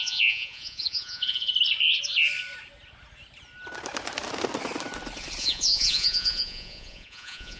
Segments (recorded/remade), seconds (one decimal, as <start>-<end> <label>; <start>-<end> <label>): 0.0-1.5 remade; 1.5-5.4 recorded; 5.4-7.6 remade